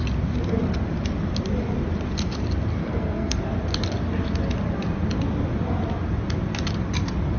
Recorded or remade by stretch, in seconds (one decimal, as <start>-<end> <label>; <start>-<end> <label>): 0.0-2.8 recorded; 2.8-3.4 remade; 3.4-7.4 recorded